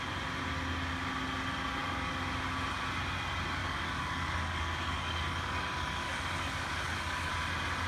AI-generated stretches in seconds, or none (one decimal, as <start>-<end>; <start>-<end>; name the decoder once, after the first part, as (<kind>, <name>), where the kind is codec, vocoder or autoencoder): 1.8-2.3 (codec, DAC); 3.6-7.3